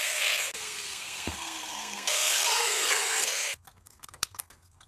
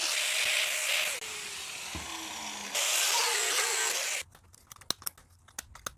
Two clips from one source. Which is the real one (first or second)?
second